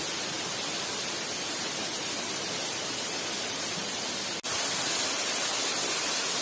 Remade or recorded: recorded